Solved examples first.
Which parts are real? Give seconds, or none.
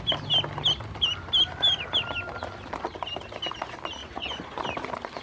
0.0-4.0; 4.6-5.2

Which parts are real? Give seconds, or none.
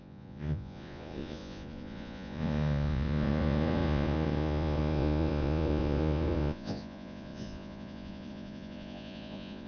none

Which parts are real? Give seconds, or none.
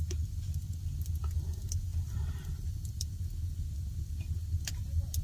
0.0-5.2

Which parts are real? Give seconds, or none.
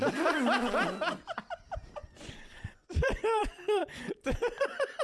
0.0-2.0; 3.4-3.8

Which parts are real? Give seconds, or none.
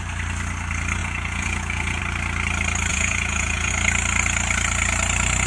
0.0-1.0; 2.0-2.9; 3.7-5.5